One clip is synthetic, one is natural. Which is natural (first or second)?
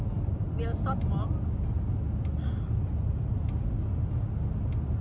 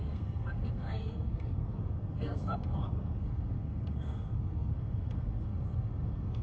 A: first